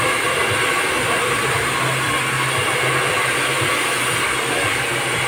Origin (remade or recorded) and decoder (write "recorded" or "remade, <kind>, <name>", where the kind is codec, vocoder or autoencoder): recorded